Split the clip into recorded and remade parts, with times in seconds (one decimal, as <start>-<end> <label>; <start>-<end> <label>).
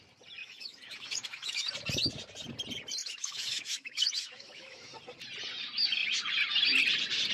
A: 0.0-0.4 recorded; 0.4-1.7 remade; 1.7-3.0 recorded; 3.0-4.9 remade; 4.9-7.3 recorded